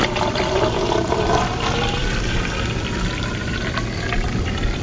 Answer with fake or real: fake